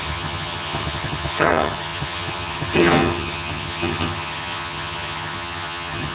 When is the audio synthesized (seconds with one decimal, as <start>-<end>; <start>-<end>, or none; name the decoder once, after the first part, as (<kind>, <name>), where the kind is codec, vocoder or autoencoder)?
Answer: 0.0-6.1 (vocoder, HiFi-GAN)